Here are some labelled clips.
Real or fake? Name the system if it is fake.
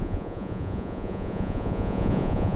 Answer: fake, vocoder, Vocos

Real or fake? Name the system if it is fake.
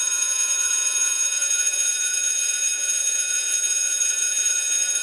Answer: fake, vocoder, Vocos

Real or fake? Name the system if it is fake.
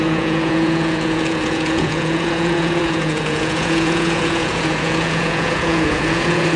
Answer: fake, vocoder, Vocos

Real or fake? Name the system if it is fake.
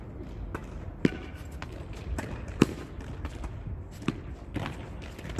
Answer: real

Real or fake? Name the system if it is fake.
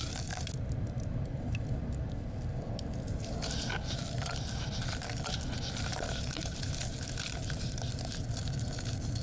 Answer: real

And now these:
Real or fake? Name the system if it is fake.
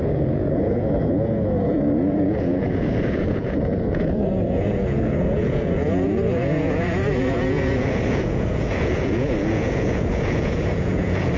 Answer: fake, vocoder, Vocos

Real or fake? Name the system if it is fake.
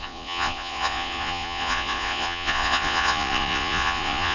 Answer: fake, vocoder, Vocos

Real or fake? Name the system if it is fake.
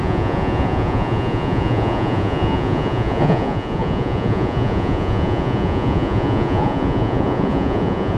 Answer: fake, vocoder, Vocos